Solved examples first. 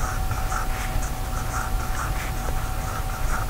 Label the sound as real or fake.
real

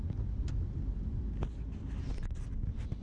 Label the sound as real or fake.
real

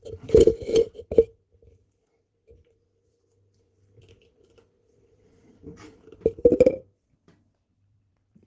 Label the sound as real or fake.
fake